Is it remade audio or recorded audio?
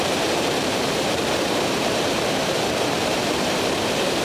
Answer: remade